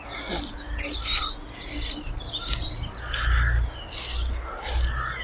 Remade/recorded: recorded